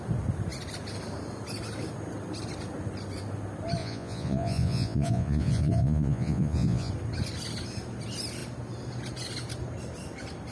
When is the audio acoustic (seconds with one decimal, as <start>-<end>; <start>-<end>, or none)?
0.0-3.8; 6.9-10.5